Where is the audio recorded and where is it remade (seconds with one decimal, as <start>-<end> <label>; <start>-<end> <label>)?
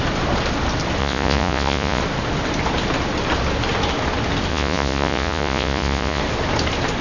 0.0-1.0 recorded; 1.0-2.0 remade; 2.0-4.5 recorded; 4.5-6.2 remade; 6.2-7.0 recorded